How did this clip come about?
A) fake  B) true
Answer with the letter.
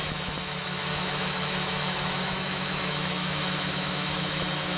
A